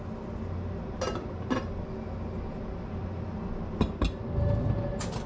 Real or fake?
real